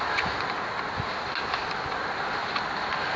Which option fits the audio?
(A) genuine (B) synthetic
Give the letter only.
A